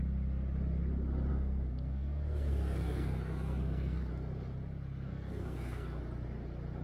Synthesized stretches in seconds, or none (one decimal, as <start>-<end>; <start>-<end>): 1.3-4.1; 5.1-6.0

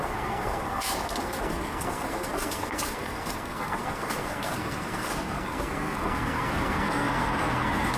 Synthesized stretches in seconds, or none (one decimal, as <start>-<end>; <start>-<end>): 0.0-8.0